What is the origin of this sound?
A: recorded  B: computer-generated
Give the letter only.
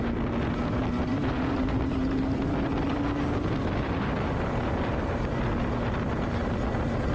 A